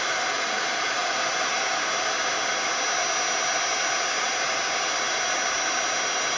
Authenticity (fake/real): real